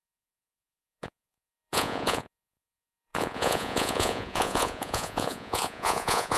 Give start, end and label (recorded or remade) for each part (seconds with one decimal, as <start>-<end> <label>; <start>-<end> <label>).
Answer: 0.0-6.4 remade